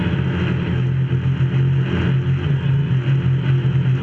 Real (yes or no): yes